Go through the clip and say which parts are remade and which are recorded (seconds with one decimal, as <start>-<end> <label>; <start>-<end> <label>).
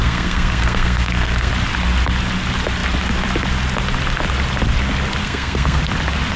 0.0-1.5 remade; 1.5-5.2 recorded; 5.2-5.8 remade; 5.8-6.4 recorded